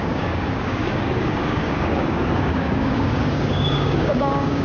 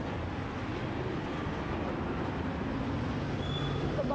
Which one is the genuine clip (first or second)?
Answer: second